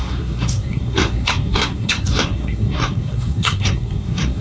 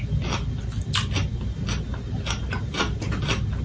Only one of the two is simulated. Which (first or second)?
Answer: first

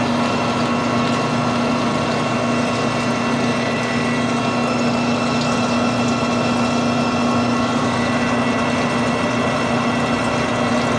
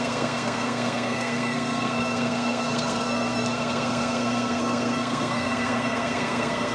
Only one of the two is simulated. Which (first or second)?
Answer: second